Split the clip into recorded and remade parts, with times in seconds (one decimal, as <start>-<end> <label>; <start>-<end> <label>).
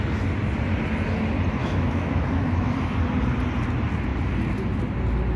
0.0-1.6 recorded; 1.6-2.7 remade; 2.7-5.4 recorded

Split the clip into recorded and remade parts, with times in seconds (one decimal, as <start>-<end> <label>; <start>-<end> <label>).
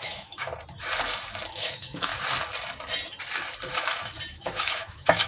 0.0-0.5 remade; 0.5-1.5 recorded; 1.5-2.1 remade; 2.1-4.3 recorded; 4.3-5.3 remade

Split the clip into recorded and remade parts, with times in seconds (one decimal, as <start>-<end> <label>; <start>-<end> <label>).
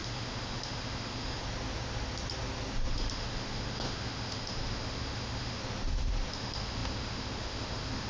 0.0-1.4 remade; 1.4-2.9 recorded; 2.9-5.6 remade; 5.6-6.3 recorded; 6.3-8.1 remade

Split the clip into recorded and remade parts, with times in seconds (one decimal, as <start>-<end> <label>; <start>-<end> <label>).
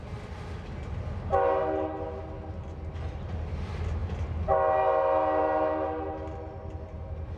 0.0-7.4 recorded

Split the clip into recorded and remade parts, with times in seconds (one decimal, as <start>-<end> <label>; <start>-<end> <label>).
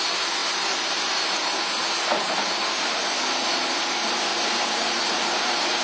0.0-5.8 recorded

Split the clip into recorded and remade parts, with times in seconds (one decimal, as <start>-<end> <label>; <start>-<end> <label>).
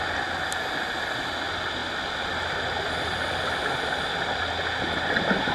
0.0-5.5 recorded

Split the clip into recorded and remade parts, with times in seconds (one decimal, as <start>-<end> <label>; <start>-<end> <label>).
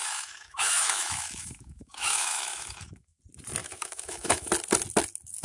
0.0-3.2 remade; 3.2-3.6 recorded; 3.6-4.5 remade; 4.5-5.4 recorded